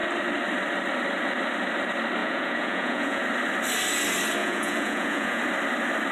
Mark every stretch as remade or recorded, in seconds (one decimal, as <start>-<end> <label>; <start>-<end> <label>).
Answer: 0.0-2.2 recorded; 2.2-3.2 remade; 3.2-4.4 recorded; 4.4-5.4 remade; 5.4-6.1 recorded